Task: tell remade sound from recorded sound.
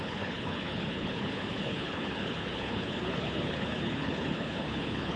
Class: remade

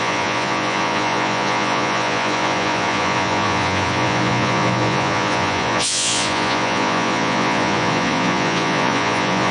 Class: remade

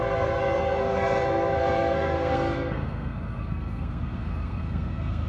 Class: remade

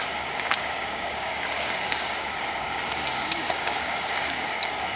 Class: remade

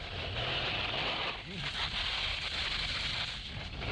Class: recorded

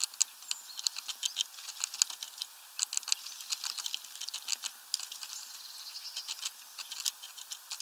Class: recorded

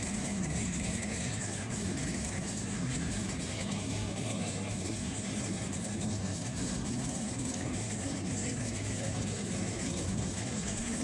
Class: remade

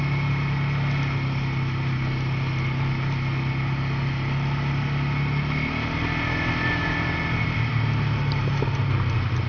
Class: recorded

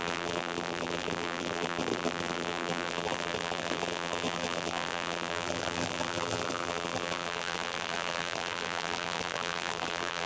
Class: remade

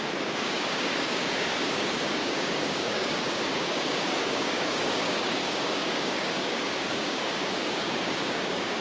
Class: remade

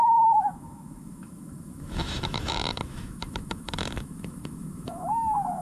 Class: remade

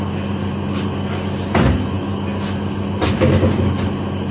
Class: recorded